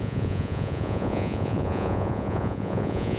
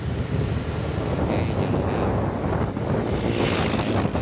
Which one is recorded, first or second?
second